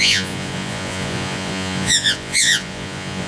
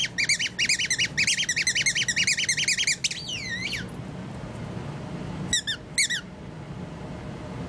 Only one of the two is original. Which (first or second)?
second